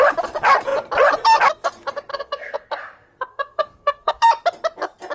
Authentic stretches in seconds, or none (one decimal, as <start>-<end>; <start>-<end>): 0.0-2.1; 2.7-3.3; 4.3-5.1